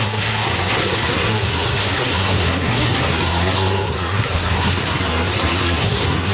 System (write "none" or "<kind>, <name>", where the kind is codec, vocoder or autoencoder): codec, SNAC